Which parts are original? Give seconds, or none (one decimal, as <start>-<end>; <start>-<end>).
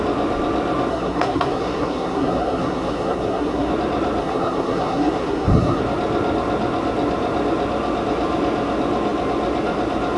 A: 0.0-0.9; 3.7-4.2; 5.8-10.2